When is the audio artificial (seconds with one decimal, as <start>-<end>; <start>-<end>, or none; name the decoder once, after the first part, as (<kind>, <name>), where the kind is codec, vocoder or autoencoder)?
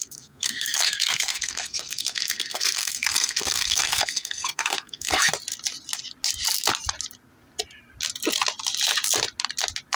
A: 0.0-5.3 (codec, SNAC)